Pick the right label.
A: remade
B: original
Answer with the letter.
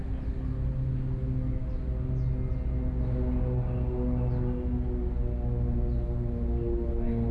B